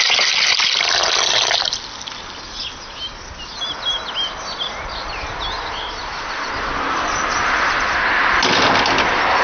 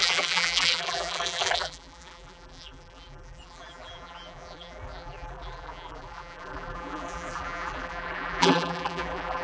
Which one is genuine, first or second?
first